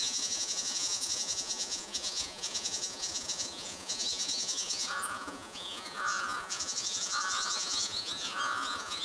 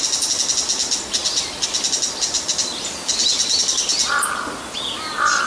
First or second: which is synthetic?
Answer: first